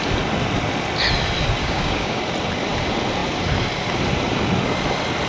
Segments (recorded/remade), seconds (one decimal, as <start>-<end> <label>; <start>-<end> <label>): 0.0-1.6 recorded; 1.6-2.2 remade; 2.2-5.3 recorded